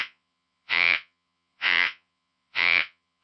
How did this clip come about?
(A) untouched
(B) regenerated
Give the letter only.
B